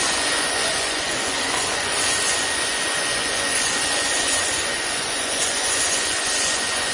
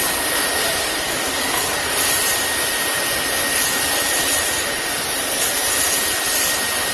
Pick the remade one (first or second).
first